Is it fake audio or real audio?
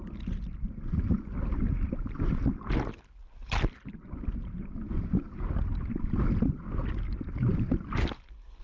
real